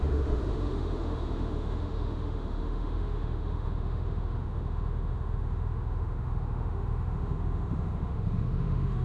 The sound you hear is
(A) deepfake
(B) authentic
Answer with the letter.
A